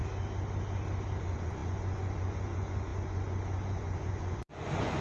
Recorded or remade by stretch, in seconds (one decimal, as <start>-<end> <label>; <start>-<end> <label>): 0.0-1.2 recorded; 1.2-5.0 remade